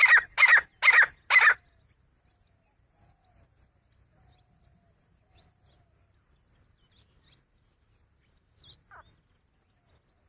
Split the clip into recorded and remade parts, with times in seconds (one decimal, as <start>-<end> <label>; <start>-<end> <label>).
0.0-10.3 recorded